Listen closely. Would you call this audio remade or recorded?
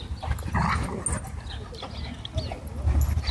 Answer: recorded